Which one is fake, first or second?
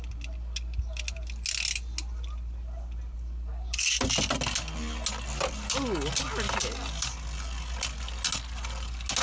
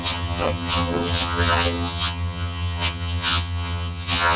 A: second